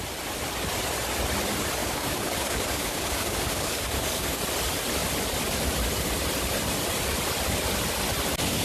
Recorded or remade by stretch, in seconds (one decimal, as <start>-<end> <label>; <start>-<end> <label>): 0.0-1.8 recorded; 1.8-4.4 remade; 4.4-8.6 recorded